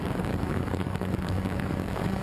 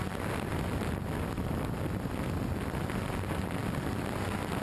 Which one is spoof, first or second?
first